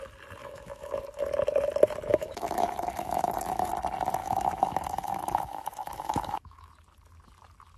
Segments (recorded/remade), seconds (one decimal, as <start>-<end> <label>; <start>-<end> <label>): 0.0-0.4 recorded; 0.4-1.0 remade; 1.0-2.1 recorded; 2.1-3.7 remade; 3.7-4.2 recorded; 4.2-6.7 remade; 6.7-7.8 recorded